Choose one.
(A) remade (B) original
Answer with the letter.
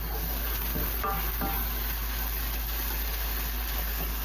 B